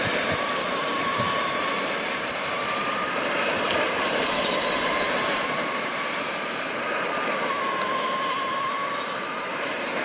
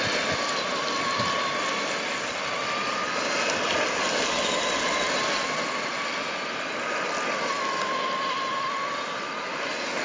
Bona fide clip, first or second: second